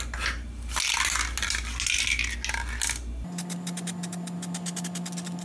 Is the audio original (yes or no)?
yes